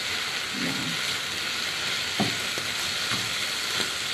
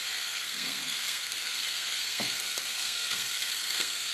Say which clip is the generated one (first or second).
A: second